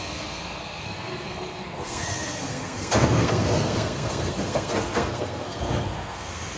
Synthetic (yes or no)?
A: yes